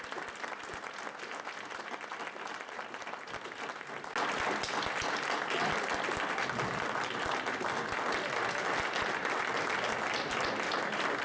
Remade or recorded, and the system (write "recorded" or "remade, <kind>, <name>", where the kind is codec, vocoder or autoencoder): recorded